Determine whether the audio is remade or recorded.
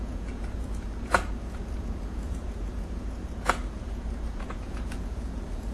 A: remade